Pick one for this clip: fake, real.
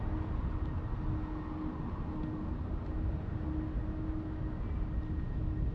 real